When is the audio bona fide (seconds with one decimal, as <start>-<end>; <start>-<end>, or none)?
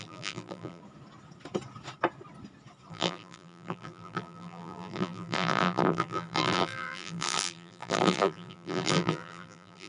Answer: 0.8-2.9